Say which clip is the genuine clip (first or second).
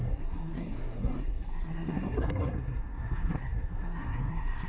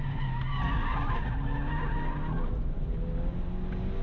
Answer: second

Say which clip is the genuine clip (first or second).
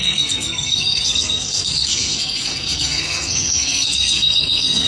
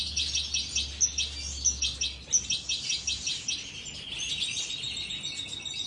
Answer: second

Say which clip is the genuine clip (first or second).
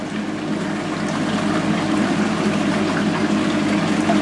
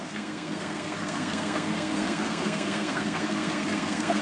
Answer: first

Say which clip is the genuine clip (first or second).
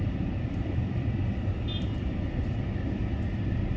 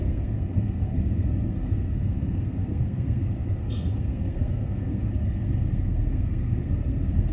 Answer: first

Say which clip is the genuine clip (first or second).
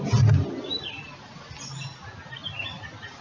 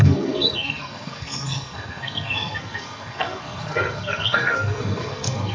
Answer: first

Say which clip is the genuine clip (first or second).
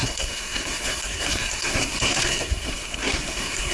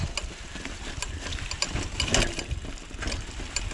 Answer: second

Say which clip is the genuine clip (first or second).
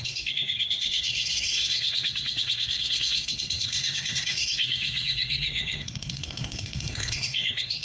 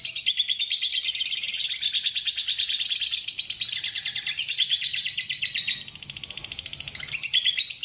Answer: second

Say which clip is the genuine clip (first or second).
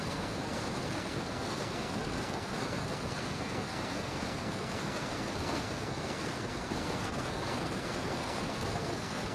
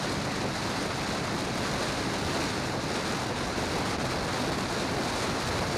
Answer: second